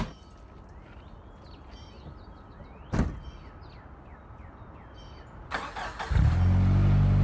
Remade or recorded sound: recorded